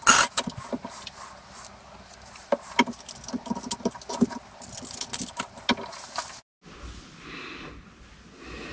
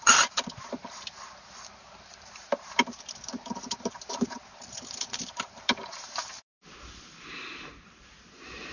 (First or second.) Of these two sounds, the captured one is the first